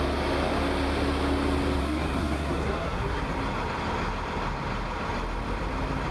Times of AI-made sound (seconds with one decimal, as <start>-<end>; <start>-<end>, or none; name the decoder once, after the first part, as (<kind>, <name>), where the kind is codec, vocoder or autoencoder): 1.8-3.2 (codec, SNAC)